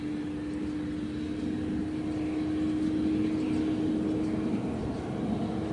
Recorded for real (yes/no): yes